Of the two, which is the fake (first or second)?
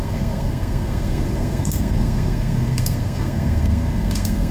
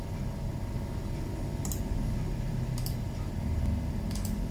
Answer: first